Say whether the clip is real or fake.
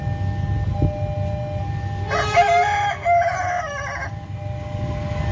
real